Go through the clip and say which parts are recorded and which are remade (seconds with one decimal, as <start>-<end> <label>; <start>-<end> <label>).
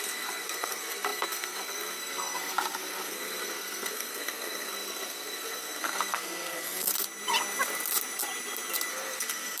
0.0-6.9 remade; 6.9-8.9 recorded; 8.9-9.6 remade